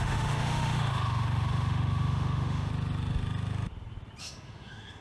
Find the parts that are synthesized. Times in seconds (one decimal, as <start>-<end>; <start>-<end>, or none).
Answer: 0.0-2.7; 4.2-5.0